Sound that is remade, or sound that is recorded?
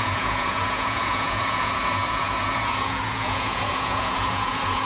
remade